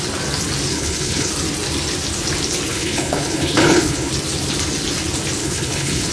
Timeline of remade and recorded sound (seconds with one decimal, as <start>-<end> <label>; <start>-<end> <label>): 0.0-0.7 recorded; 0.7-1.3 remade; 1.3-2.7 recorded; 2.7-4.1 remade; 4.1-5.4 recorded; 5.4-6.1 remade